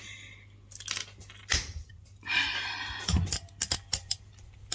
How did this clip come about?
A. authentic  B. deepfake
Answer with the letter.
A